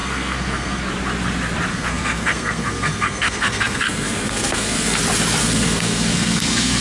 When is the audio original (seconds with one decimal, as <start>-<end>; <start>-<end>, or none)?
0.8-1.7; 5.0-5.4